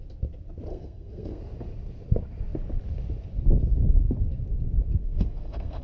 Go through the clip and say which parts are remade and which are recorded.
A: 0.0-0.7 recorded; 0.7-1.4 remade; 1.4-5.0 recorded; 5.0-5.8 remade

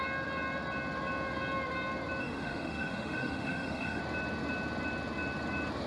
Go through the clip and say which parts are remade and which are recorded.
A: 0.0-2.2 recorded; 2.2-4.0 remade; 4.0-5.9 recorded

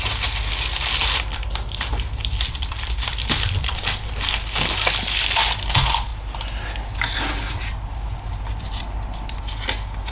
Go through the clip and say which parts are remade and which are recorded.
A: 0.0-1.0 recorded; 1.0-4.1 remade; 4.1-10.1 recorded

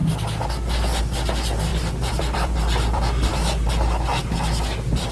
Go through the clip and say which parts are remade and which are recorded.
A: 0.0-1.7 recorded; 1.7-3.3 remade; 3.3-5.1 recorded

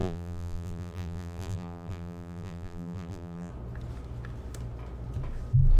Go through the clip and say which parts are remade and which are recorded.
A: 0.0-3.5 remade; 3.5-5.8 recorded